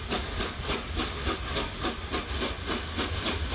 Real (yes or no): yes